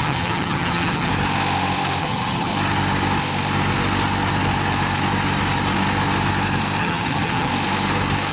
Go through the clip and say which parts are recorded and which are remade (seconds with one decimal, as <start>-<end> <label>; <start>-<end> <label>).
0.0-1.1 remade; 1.1-2.0 recorded; 2.0-2.5 remade; 2.5-6.8 recorded; 6.8-7.5 remade; 7.5-8.3 recorded